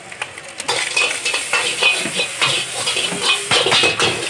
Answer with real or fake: real